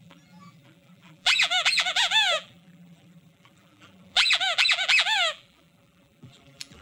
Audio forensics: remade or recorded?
remade